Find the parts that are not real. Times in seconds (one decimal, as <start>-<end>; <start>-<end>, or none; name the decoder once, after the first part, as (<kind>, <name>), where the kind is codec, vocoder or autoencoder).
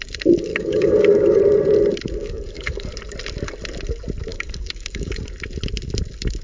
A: 0.5-1.4 (codec, DAC); 2.2-2.9; 4.3-5.2